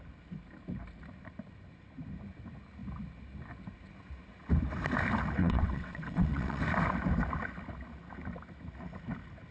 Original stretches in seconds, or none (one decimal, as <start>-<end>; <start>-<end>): 0.0-5.4; 6.6-9.5